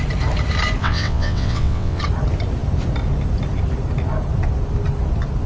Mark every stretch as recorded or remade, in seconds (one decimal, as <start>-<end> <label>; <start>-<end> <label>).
0.0-0.8 recorded; 0.8-2.0 remade; 2.0-5.5 recorded